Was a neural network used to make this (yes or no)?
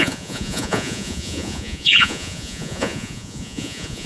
yes